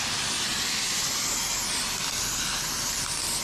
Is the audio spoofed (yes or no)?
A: no